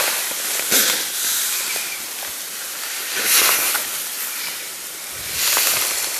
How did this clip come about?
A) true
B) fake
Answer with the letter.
A